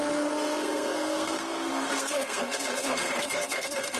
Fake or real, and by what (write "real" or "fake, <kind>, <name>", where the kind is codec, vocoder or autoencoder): fake, codec, SNAC